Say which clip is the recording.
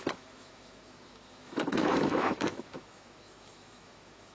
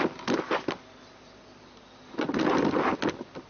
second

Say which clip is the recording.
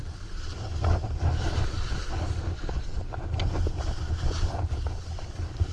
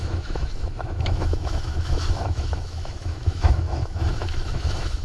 first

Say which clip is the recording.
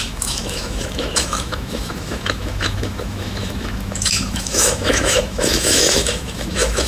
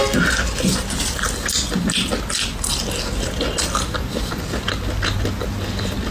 second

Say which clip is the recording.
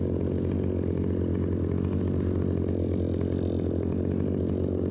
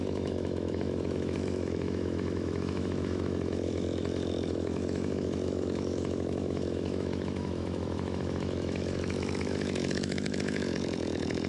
first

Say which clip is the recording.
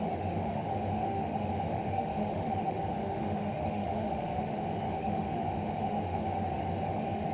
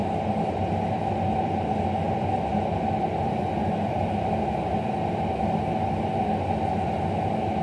second